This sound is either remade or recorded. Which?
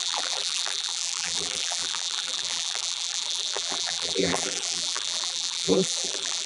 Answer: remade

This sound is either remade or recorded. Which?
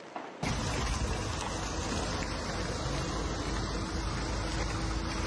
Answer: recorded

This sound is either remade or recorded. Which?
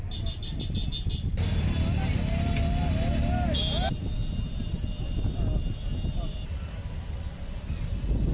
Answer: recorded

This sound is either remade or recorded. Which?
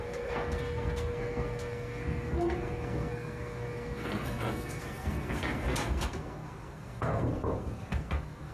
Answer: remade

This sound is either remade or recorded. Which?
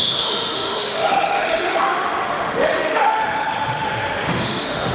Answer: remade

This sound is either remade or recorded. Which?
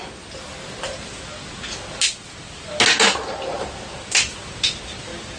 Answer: recorded